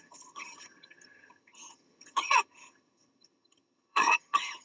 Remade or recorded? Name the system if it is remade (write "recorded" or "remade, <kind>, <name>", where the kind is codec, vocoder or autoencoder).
remade, vocoder, HiFi-GAN